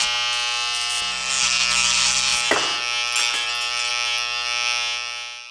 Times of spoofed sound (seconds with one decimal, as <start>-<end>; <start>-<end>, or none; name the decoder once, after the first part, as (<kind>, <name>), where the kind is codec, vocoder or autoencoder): none